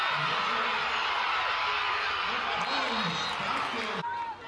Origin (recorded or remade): recorded